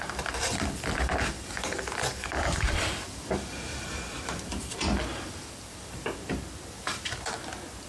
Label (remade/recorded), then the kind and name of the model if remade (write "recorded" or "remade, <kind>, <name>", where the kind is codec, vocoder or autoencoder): remade, vocoder, BigVGAN v2